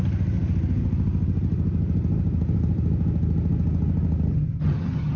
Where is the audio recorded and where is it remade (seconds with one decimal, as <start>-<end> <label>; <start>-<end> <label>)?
0.0-4.3 recorded; 4.3-5.2 remade